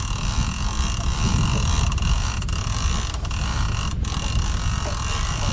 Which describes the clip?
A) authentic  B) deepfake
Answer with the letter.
A